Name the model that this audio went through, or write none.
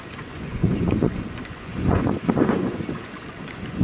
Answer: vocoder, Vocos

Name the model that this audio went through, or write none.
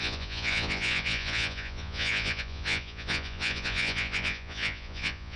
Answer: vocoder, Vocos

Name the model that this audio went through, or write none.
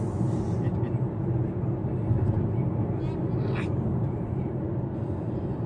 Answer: none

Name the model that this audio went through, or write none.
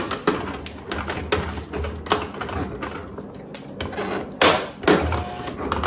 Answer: none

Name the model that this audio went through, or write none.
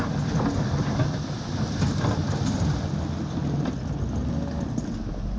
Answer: none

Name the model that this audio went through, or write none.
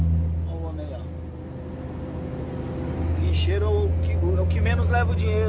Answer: none